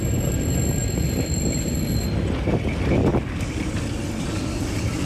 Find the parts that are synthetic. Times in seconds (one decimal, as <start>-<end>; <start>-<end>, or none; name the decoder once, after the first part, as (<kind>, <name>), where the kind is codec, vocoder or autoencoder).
none